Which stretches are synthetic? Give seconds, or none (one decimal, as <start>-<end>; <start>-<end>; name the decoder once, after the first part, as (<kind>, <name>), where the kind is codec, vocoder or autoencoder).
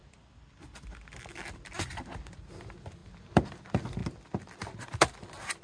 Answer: none